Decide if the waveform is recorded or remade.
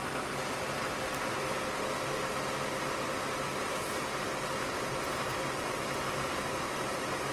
recorded